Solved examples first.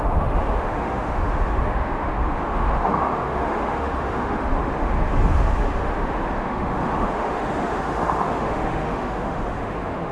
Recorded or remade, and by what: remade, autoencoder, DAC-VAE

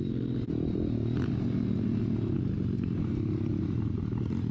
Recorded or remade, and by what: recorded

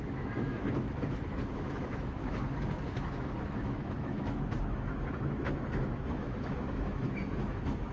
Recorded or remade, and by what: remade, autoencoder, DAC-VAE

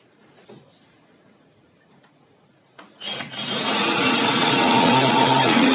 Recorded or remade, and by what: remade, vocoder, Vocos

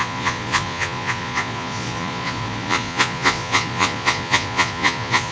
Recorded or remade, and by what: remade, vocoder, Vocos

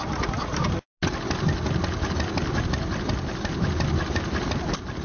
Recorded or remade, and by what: recorded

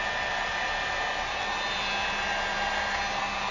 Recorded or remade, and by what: recorded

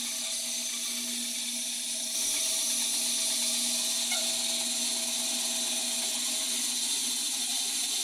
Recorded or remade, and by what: recorded